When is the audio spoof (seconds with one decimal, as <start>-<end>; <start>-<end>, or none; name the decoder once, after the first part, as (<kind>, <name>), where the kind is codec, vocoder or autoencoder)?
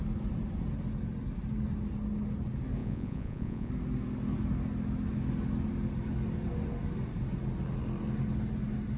2.8-3.7 (vocoder, Vocos)